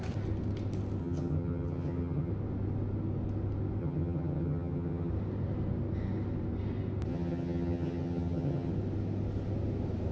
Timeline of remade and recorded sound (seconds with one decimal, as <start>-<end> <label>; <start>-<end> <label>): 0.0-1.0 recorded; 1.0-2.3 remade; 2.3-3.8 recorded; 3.8-5.1 remade; 5.1-7.1 recorded; 7.1-8.7 remade; 8.7-10.1 recorded